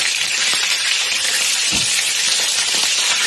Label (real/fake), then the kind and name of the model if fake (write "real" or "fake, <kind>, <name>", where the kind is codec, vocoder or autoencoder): real